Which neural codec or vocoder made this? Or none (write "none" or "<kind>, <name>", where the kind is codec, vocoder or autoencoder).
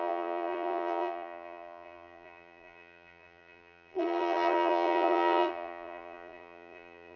vocoder, BigVGAN v2